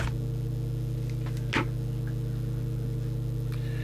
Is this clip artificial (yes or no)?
no